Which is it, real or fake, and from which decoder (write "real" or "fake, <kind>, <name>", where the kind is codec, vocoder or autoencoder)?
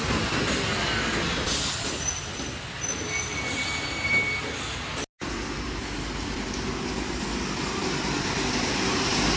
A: real